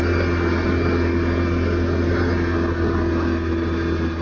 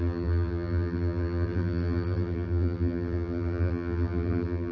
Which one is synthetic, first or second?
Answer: second